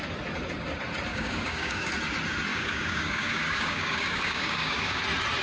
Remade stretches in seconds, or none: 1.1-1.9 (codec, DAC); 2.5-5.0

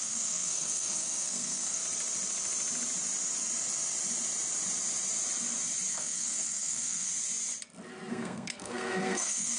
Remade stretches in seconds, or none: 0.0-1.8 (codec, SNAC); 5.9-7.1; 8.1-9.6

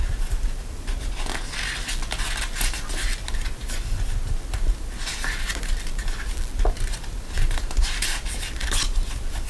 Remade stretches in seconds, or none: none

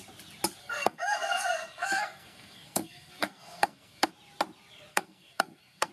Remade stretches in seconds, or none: 0.6-4.1 (codec, SNAC); 4.9-5.9

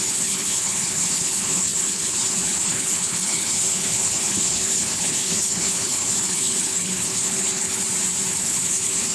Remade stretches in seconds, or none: 0.0-7.8 (codec, HILCodec); 8.3-9.1

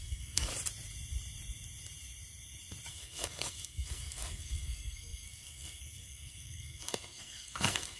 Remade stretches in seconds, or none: 0.0-0.5 (codec, SNAC); 2.9-8.0

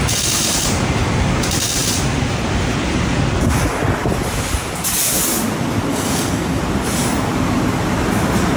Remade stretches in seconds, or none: 5.9-6.6 (codec, SNAC)

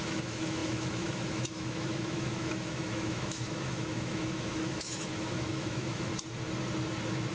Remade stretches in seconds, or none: 0.0-6.1 (autoencoder, DAC-VAE)